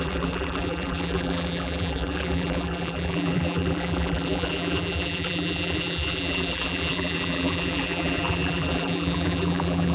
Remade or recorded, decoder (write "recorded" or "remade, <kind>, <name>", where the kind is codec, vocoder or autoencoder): remade, vocoder, BigVGAN v2